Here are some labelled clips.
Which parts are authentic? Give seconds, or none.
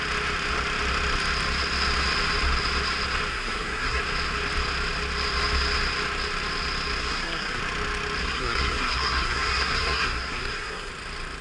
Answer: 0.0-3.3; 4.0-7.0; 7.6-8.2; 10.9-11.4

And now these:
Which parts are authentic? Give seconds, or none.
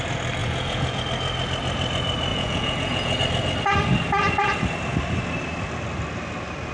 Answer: 0.0-0.4; 1.0-2.3; 3.2-6.7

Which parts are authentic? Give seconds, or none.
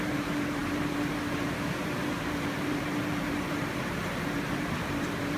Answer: none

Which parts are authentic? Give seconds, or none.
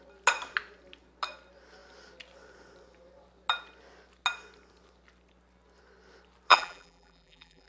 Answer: 0.0-6.5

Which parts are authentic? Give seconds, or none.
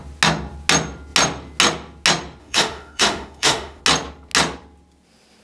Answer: 0.0-2.4; 3.8-5.4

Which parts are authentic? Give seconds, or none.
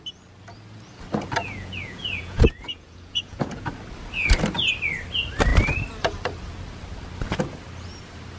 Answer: 0.0-1.4; 3.7-8.4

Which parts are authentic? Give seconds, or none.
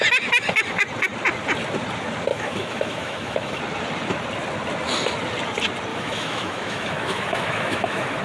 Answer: 0.0-2.3; 3.6-5.9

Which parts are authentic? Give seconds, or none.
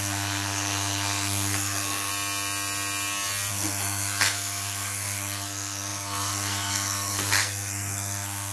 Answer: 2.1-3.5